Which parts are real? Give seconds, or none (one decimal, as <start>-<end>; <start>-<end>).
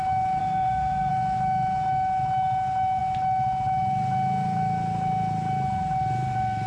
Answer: 0.0-0.4; 1.1-6.7